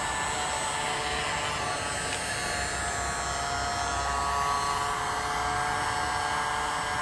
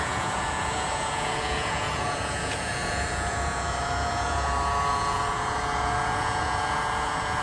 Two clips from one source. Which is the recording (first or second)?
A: first